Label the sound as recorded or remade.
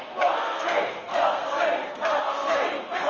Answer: remade